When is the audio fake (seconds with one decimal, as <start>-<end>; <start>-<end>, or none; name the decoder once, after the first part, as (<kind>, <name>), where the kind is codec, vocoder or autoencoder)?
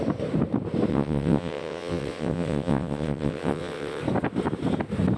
0.9-4.0 (vocoder, WaveNeXt)